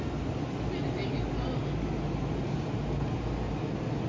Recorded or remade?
recorded